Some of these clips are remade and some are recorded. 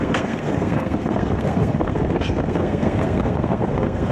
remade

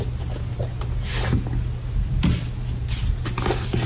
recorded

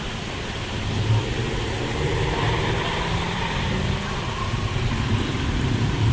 remade